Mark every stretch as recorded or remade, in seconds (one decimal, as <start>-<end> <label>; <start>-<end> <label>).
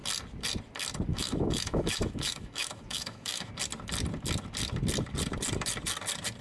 0.0-1.1 recorded; 1.1-3.5 remade; 3.5-6.4 recorded